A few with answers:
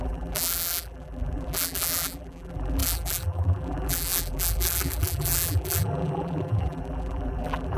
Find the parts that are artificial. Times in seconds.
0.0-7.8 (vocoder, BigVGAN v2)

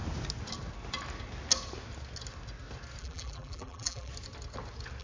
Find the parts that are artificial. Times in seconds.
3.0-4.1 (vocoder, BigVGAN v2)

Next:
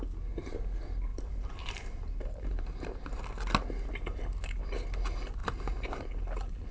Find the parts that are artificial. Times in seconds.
1.1-3.2 (vocoder, BigVGAN v2); 5.4-6.1

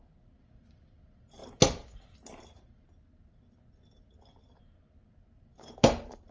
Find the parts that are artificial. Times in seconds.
none